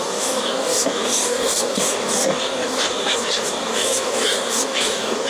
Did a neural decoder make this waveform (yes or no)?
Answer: yes